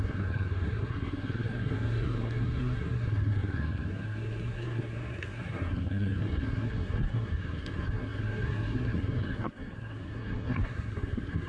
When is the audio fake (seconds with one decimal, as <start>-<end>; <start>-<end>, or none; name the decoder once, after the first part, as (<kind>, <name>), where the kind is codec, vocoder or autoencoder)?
0.0-11.5 (codec, SNAC)